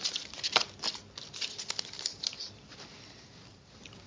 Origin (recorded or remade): recorded